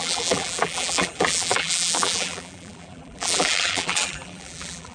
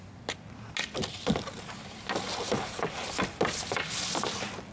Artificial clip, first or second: first